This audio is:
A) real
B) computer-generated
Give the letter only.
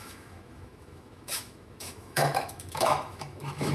B